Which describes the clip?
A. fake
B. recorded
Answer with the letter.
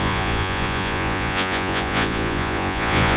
A